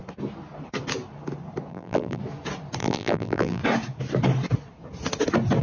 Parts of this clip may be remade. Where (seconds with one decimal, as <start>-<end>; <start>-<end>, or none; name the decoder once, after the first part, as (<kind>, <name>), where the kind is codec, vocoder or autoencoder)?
1.7-2.2 (vocoder, BigVGAN v2); 2.8-3.6